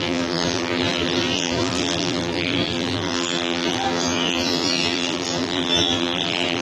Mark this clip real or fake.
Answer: fake